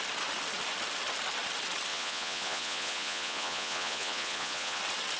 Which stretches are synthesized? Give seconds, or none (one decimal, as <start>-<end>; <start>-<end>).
1.9-4.8

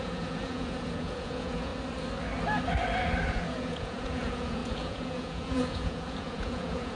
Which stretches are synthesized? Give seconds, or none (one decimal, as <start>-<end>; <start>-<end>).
0.0-1.7; 3.3-7.0